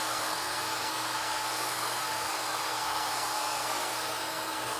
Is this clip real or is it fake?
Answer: fake